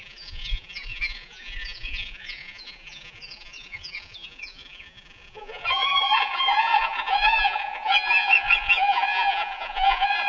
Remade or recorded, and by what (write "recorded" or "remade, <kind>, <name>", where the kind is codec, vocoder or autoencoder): remade, vocoder, Vocos